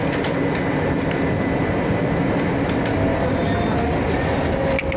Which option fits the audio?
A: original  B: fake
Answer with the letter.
A